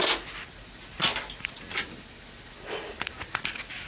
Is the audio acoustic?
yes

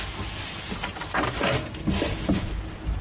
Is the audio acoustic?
yes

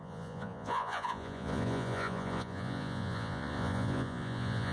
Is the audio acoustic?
no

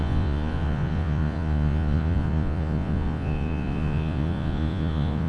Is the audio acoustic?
no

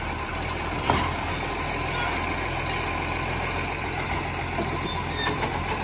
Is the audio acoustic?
yes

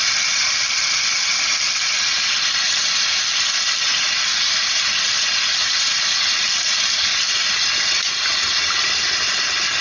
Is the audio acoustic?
yes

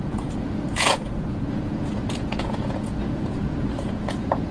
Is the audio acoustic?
no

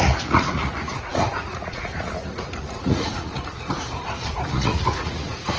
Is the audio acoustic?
no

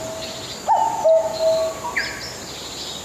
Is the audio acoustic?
yes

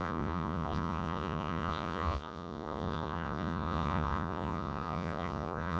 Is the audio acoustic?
no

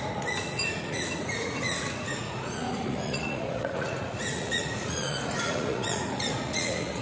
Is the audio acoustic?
no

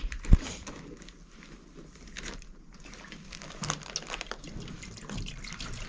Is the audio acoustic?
yes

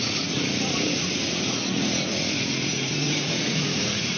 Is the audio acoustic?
no